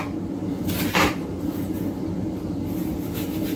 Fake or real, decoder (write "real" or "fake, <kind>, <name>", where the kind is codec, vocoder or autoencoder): real